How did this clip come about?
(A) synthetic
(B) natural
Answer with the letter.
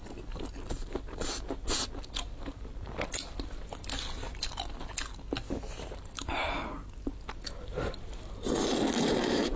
B